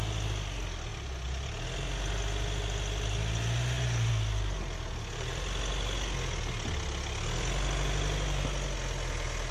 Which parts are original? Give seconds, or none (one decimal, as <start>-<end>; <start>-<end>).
0.0-9.5